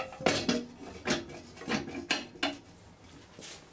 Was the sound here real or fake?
real